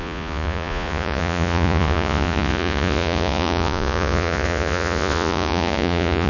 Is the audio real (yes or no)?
no